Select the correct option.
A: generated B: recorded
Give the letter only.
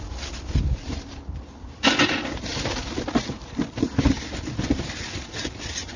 A